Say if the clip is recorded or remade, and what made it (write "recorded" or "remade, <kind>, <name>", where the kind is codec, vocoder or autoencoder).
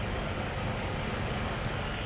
remade, codec, DAC